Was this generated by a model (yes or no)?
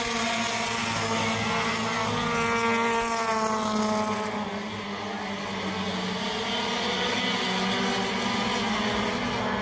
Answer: no